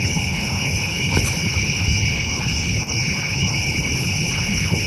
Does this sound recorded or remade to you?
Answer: remade